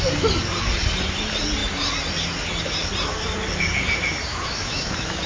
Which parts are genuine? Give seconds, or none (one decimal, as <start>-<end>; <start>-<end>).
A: 0.0-4.3